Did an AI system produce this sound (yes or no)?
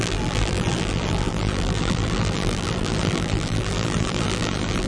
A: yes